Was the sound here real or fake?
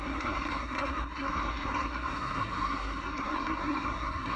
fake